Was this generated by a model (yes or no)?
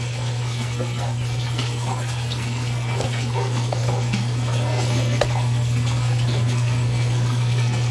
yes